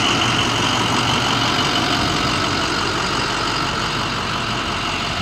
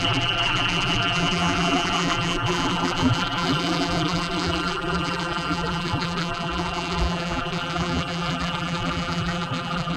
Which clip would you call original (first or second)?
first